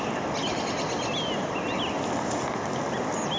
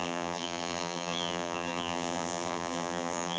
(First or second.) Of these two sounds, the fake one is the second